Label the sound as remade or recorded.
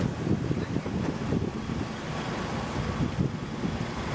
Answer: recorded